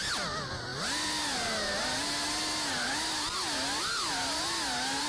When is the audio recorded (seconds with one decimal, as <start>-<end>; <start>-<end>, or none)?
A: 0.0-5.1